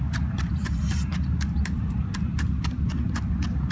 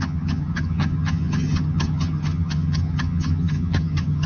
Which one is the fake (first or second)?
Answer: second